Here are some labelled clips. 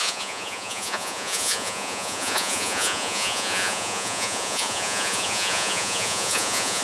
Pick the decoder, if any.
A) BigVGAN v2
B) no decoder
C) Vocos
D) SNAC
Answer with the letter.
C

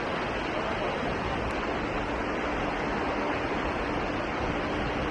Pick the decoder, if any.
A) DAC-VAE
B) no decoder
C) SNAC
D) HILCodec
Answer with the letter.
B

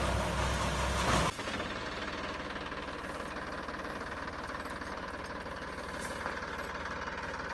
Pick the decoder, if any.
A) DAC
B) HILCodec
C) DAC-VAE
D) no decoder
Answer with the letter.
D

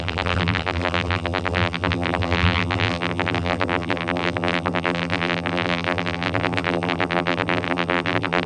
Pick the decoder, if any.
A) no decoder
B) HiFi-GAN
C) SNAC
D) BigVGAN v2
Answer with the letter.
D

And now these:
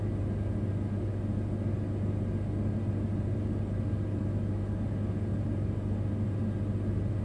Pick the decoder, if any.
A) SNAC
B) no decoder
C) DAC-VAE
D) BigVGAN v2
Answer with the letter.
B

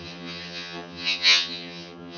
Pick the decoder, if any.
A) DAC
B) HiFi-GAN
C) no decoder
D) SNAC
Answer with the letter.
B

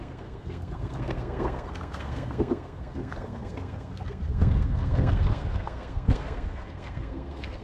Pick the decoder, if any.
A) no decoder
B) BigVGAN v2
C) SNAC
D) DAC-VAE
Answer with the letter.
C